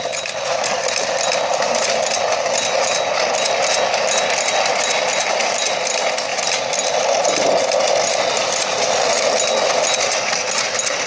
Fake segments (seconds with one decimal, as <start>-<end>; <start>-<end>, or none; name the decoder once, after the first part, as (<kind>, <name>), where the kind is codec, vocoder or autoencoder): none

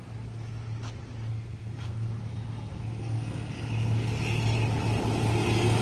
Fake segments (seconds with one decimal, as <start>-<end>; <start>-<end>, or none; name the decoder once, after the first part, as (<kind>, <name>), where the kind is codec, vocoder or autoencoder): 1.3-2.1 (codec, SNAC); 3.0-3.5

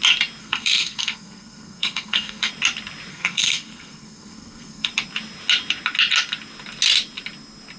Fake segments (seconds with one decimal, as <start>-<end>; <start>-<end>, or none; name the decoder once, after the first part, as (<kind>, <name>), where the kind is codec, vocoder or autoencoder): 0.4-2.5 (codec, SNAC); 3.1-4.9

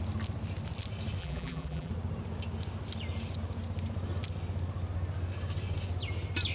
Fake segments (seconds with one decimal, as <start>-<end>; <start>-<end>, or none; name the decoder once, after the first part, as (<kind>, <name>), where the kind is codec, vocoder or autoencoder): 1.2-1.9 (vocoder, BigVGAN v2)